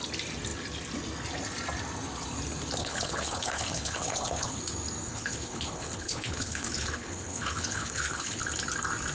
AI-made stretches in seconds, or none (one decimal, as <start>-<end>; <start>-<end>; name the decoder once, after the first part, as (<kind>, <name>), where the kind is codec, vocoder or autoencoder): 2.8-4.6 (codec, HILCodec); 5.1-8.4

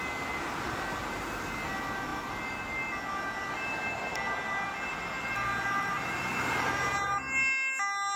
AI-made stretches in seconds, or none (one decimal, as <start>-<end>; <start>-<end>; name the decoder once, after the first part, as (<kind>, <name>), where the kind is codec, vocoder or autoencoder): none